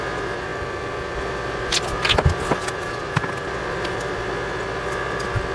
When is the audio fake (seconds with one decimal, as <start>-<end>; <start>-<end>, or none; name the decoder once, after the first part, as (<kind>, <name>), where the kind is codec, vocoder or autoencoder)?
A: none